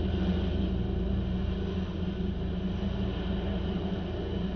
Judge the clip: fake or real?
real